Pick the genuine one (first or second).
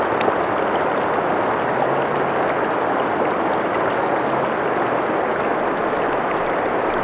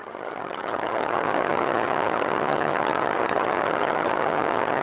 first